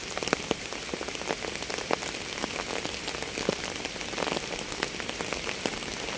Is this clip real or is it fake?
real